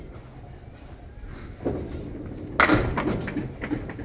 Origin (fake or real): real